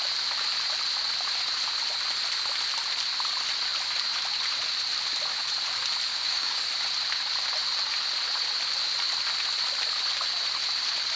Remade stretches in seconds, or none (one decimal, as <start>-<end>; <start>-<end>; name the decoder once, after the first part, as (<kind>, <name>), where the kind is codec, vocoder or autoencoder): 6.1-6.6 (codec, DAC)